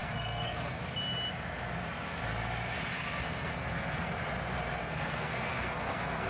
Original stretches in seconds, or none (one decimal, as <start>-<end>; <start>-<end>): 0.8-2.9; 4.2-4.8